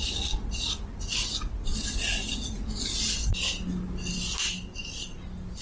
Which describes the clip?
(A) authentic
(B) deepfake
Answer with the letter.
A